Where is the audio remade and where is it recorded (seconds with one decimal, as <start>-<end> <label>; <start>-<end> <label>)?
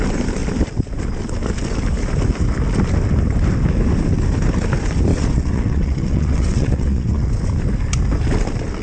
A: 0.0-5.1 recorded; 5.1-7.3 remade; 7.3-8.8 recorded